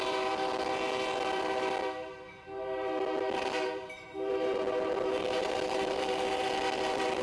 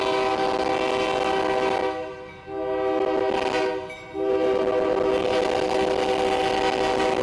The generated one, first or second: first